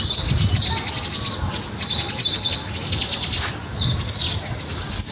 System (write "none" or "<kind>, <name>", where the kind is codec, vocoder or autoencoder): none